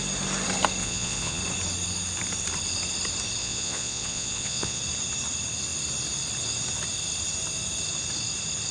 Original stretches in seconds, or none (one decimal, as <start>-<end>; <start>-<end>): 0.0-0.8; 1.4-3.4; 4.8-8.7

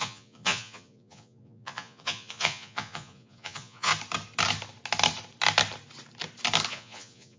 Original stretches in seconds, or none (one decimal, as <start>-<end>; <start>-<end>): 3.9-6.7